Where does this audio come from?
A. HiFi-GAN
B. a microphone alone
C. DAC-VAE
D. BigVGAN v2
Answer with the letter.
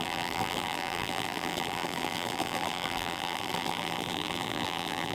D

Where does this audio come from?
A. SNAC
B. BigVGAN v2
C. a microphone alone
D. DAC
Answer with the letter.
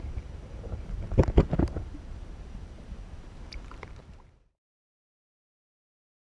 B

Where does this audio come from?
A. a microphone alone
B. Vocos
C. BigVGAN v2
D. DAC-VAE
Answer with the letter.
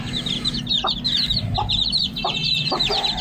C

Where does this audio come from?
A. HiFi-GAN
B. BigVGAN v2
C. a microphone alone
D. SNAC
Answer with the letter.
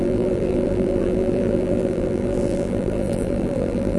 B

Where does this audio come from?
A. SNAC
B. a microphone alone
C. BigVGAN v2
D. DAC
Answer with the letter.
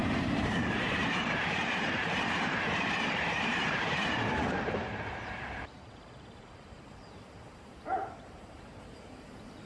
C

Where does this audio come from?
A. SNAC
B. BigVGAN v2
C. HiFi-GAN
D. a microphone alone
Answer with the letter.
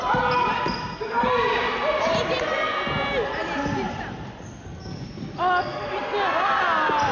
D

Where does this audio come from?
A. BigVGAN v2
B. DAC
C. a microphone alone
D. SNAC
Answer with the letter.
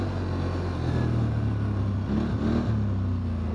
C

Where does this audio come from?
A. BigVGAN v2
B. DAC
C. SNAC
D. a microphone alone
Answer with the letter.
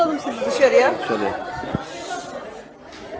D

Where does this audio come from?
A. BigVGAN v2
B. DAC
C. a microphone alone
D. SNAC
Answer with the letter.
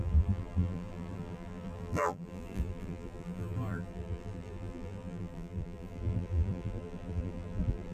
A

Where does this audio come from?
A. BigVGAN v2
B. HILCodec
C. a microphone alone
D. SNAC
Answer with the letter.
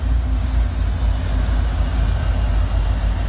C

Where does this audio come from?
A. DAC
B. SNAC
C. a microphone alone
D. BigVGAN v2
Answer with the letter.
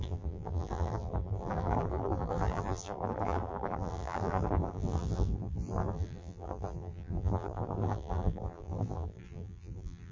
D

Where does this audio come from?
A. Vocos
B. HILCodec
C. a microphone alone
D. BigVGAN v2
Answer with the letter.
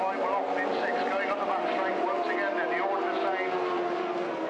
C